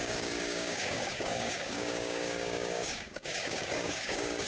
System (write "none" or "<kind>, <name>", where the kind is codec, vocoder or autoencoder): codec, DAC